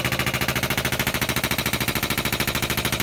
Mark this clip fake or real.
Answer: real